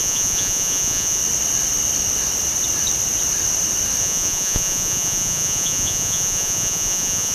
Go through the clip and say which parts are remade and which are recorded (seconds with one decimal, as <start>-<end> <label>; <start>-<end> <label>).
0.0-1.2 remade; 1.2-4.0 recorded; 4.0-7.3 remade